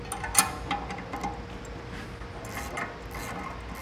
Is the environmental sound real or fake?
real